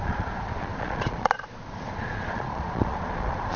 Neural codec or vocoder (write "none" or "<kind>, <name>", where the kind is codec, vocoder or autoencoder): vocoder, Vocos